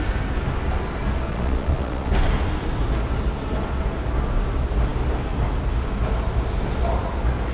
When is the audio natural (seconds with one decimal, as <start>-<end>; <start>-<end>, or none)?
0.0-1.3; 2.1-7.5